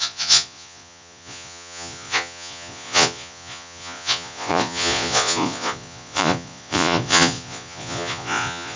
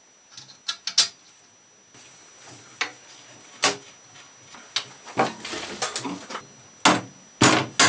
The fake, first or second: first